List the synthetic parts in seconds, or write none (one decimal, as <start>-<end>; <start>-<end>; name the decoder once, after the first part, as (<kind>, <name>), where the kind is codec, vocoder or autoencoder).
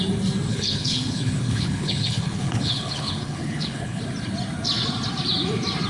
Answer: 0.5-4.0 (codec, HILCodec)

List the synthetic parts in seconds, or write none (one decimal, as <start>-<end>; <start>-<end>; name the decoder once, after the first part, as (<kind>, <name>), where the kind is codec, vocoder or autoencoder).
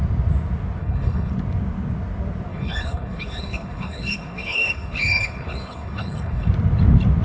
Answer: 0.8-1.3 (codec, HILCodec); 2.5-6.5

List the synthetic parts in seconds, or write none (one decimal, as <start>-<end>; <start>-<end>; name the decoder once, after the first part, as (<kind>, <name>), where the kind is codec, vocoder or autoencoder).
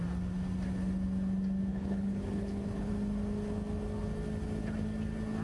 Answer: 1.7-2.9 (codec, HILCodec)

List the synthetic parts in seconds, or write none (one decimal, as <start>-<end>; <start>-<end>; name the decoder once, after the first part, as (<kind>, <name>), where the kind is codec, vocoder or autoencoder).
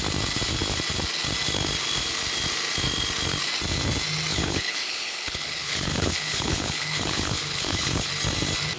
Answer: 4.3-8.1 (codec, HILCodec)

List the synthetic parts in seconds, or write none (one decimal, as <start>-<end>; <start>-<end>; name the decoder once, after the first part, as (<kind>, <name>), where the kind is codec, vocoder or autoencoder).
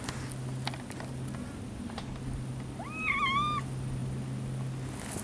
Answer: none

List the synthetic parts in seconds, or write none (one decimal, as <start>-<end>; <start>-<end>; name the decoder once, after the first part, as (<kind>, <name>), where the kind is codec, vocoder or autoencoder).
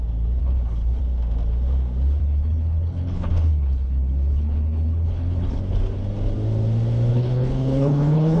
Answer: 0.4-1.0 (codec, HILCodec); 2.2-5.6; 7.1-8.4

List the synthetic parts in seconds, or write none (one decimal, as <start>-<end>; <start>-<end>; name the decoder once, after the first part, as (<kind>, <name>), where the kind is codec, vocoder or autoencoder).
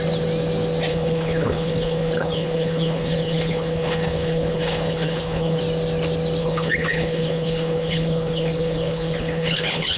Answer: 0.9-5.6 (codec, HILCodec); 6.4-10.0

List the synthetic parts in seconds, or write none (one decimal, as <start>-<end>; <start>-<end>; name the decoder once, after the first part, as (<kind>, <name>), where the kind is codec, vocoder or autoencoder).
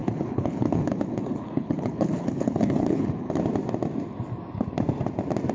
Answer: 0.0-3.3 (codec, HILCodec)